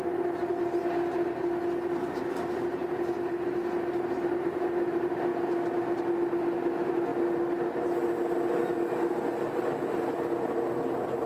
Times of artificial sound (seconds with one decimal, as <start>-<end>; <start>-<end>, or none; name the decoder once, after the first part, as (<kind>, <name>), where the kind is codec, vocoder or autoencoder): none